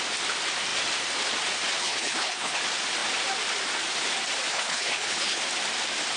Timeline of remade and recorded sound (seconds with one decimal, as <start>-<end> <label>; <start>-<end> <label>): 0.0-1.8 recorded; 1.8-2.6 remade; 2.6-4.5 recorded; 4.5-5.4 remade; 5.4-6.2 recorded